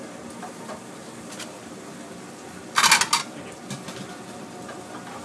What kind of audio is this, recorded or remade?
recorded